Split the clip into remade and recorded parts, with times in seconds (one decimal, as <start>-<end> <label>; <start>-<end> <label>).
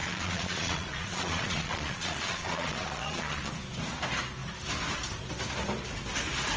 0.0-3.5 remade; 3.5-6.6 recorded